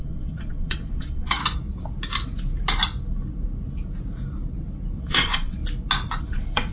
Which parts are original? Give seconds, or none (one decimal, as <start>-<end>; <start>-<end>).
1.4-5.0; 5.6-6.2